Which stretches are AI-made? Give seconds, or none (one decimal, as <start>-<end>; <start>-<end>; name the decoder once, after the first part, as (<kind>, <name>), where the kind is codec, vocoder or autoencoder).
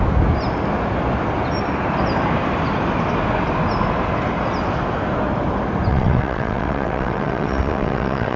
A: 5.9-8.4 (vocoder, WaveNeXt)